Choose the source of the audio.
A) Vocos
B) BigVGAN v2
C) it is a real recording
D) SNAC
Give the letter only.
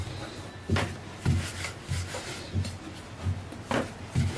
C